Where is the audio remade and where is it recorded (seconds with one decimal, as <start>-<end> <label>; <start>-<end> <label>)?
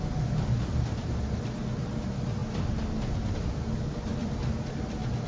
0.0-5.3 recorded